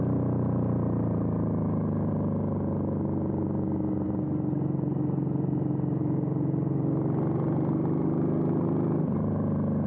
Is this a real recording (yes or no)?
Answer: yes